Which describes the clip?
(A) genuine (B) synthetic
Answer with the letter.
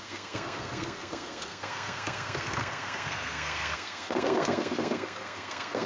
B